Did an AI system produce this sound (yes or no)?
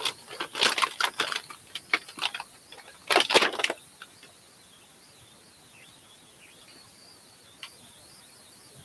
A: no